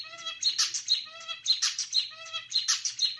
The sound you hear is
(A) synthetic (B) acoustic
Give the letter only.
A